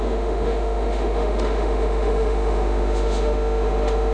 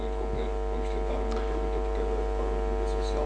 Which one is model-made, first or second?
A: first